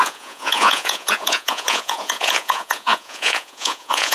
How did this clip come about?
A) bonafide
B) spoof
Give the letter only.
B